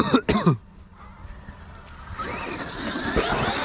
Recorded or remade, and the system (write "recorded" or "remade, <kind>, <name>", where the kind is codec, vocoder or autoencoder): recorded